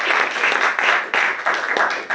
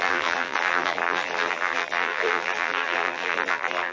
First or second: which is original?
first